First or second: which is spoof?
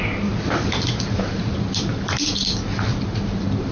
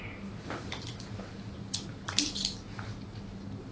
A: first